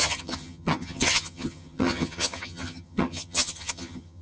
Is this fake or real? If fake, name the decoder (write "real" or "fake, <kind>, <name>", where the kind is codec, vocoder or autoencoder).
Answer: fake, vocoder, HiFi-GAN